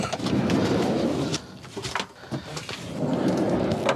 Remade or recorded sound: recorded